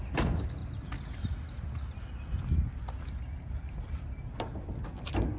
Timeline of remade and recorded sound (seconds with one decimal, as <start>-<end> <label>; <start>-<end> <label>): 0.0-5.4 recorded